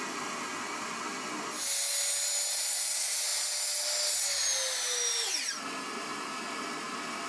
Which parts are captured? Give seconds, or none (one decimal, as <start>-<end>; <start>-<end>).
0.0-7.3